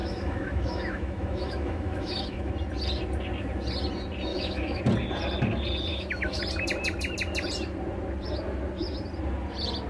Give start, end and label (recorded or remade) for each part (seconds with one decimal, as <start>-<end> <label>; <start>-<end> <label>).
0.0-2.5 remade; 2.5-4.3 recorded; 4.3-4.8 remade; 4.8-5.9 recorded; 5.9-6.4 remade; 6.4-9.9 recorded